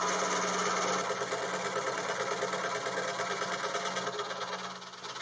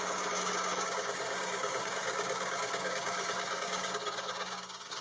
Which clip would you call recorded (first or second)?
first